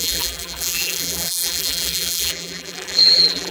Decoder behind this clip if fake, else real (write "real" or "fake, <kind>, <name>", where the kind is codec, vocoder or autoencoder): fake, vocoder, BigVGAN v2